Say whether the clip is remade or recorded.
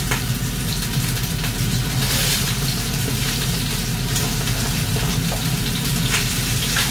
remade